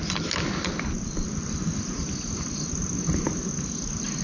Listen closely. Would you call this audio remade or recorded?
recorded